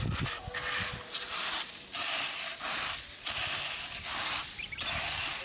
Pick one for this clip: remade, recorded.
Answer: recorded